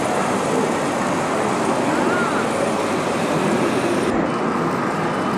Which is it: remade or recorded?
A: recorded